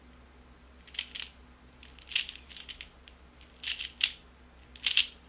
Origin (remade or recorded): recorded